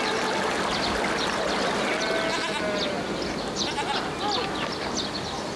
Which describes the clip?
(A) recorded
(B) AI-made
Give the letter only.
A